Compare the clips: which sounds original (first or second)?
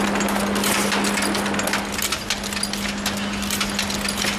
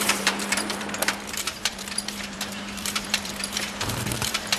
first